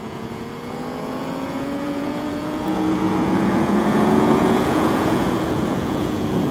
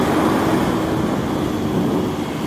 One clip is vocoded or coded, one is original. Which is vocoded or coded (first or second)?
first